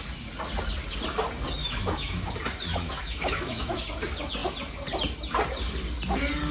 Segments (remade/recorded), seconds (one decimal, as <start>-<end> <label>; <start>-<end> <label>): 0.0-1.6 recorded; 1.6-2.3 remade; 2.3-2.7 recorded; 2.7-3.8 remade; 3.8-6.5 recorded